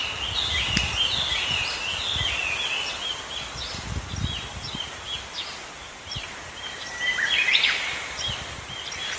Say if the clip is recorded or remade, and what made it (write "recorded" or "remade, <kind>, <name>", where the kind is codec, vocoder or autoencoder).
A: recorded